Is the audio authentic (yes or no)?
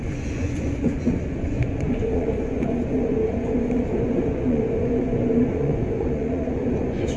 no